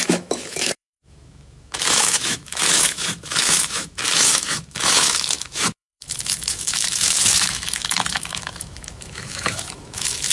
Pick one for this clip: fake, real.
fake